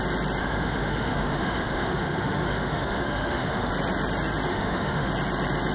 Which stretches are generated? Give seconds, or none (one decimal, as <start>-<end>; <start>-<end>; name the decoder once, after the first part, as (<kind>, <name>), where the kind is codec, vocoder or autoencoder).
0.4-3.7 (autoencoder, DAC-VAE); 4.5-5.1